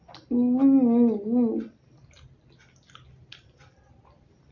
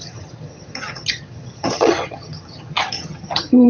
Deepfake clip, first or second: second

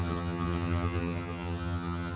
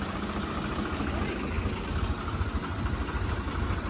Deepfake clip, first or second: first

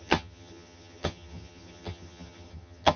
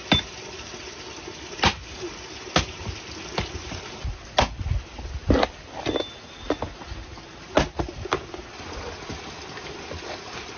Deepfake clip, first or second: first